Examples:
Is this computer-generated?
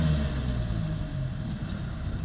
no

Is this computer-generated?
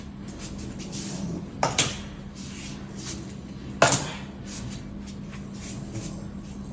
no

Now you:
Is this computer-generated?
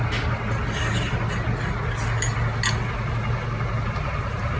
no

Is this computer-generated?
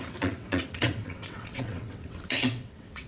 yes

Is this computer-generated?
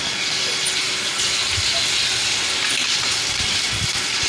no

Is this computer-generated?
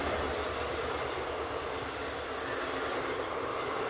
no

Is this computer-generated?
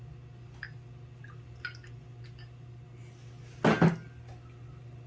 no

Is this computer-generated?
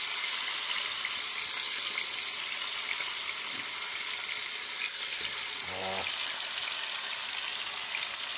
no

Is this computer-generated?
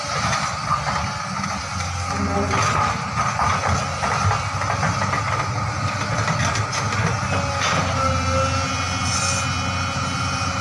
no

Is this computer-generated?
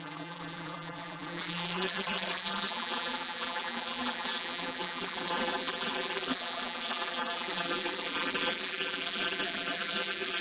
yes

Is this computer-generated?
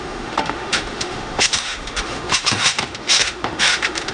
yes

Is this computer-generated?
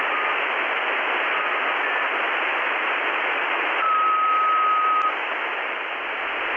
no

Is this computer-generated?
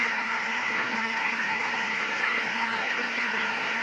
yes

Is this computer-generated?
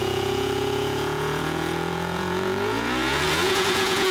yes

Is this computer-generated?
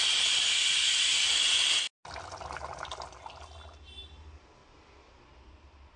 no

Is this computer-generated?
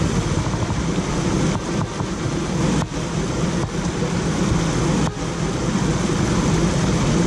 no